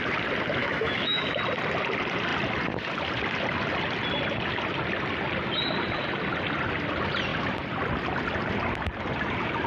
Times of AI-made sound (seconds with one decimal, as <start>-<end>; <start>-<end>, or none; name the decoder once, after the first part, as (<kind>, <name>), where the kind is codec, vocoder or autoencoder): 0.6-1.4 (autoencoder, DAC-VAE)